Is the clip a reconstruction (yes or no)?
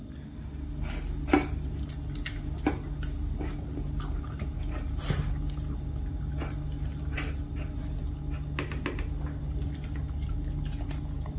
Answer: no